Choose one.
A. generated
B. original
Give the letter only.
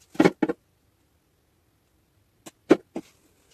B